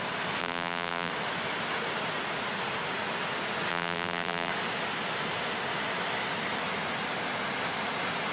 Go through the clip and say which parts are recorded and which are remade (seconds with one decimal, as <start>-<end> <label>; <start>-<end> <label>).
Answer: 0.0-0.4 recorded; 0.4-1.1 remade; 1.1-3.7 recorded; 3.7-4.5 remade; 4.5-8.3 recorded